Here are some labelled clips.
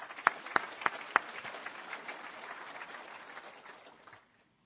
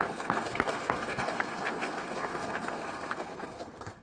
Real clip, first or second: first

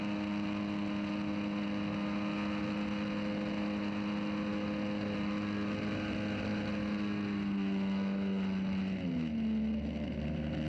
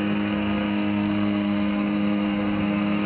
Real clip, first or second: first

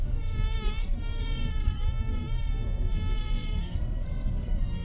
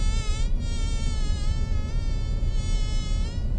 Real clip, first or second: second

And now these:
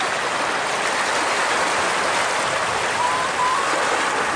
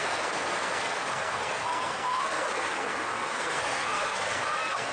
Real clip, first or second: first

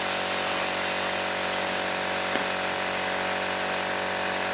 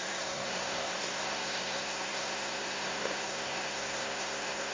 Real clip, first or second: first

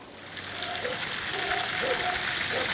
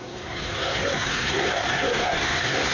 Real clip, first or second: first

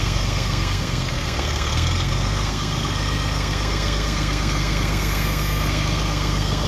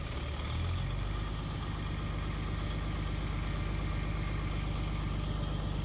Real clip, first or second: second